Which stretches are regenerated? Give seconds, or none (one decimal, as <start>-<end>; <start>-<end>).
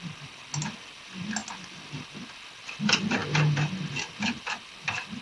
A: none